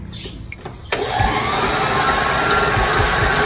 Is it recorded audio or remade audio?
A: recorded